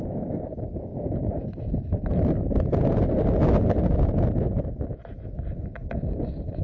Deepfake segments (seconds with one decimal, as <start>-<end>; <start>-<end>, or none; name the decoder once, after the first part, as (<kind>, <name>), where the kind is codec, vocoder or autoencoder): 2.1-2.8 (vocoder, BigVGAN v2)